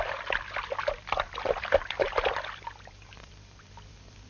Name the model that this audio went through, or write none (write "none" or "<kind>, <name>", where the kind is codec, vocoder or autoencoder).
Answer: vocoder, BigVGAN v2